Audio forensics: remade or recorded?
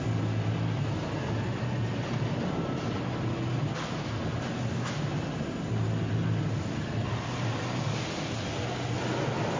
recorded